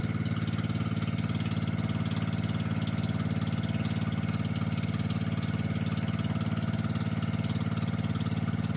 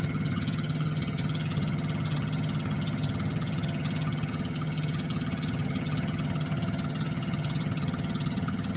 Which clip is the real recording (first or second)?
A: first